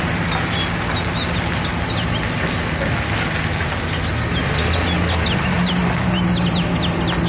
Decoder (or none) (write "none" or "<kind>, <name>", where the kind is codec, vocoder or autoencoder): none